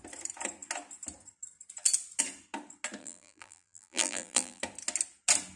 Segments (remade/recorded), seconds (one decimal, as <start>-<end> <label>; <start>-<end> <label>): 0.0-3.0 recorded; 3.0-4.6 remade; 4.6-5.6 recorded